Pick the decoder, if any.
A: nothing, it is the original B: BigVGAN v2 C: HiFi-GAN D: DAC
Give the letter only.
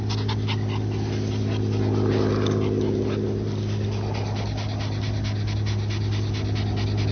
A